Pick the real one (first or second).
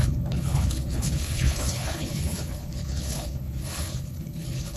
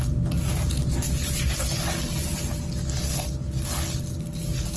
second